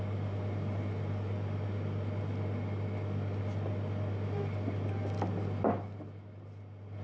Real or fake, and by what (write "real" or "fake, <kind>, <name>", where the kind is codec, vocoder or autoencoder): real